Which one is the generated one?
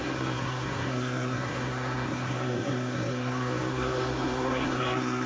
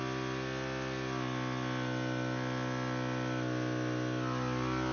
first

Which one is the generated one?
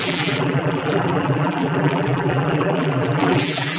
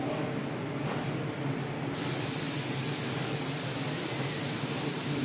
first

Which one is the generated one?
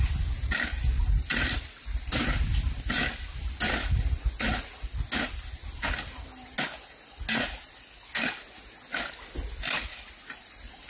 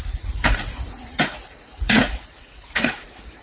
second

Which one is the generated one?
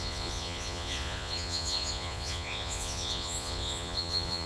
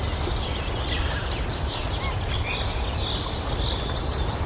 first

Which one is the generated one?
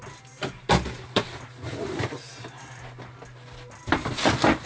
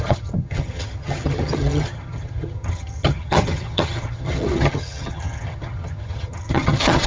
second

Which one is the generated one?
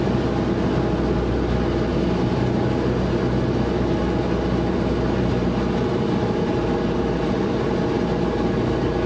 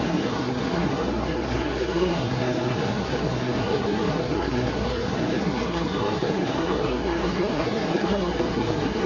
second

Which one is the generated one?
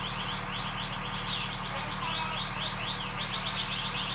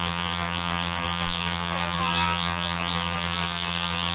second